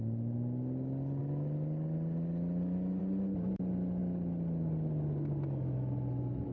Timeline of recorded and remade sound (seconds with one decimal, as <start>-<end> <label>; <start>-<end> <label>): 0.0-6.5 recorded